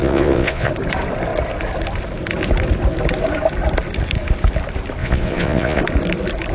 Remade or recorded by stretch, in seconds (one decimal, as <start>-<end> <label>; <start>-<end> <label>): 0.0-0.7 remade; 0.7-5.0 recorded; 5.0-5.8 remade; 5.8-6.5 recorded